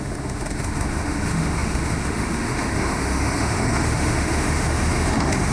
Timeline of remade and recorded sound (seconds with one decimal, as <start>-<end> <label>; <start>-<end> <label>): 0.0-5.5 remade